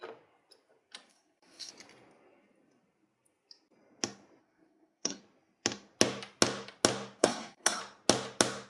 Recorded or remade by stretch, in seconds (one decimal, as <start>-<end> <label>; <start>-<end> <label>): 0.0-1.1 recorded; 1.1-1.7 remade; 1.7-4.4 recorded; 4.4-5.2 remade; 5.2-7.2 recorded; 7.2-7.8 remade; 7.8-8.7 recorded